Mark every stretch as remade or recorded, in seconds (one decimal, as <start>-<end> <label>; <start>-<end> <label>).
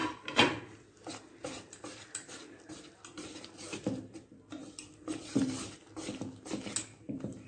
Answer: 0.0-7.5 recorded